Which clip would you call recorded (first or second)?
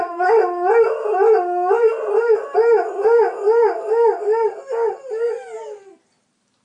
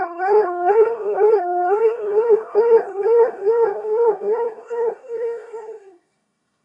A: first